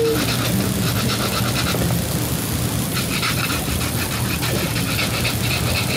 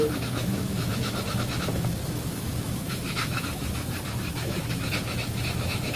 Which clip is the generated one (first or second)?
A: second